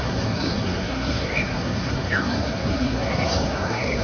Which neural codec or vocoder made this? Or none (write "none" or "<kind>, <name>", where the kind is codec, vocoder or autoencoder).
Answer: codec, SNAC